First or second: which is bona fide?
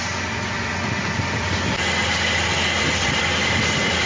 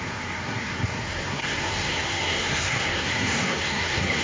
first